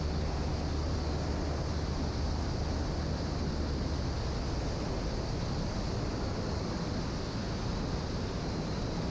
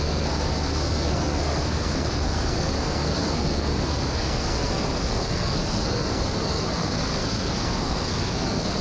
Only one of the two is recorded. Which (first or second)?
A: first